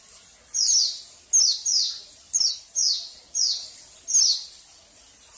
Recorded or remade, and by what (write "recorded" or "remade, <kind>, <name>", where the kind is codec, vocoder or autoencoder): recorded